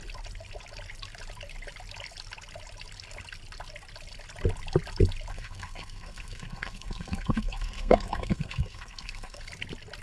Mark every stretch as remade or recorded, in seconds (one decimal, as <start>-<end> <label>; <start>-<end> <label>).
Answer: 0.0-5.3 recorded; 5.3-9.5 remade; 9.5-10.0 recorded